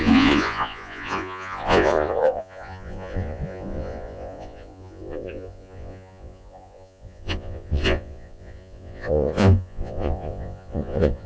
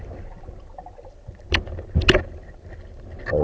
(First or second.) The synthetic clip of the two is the first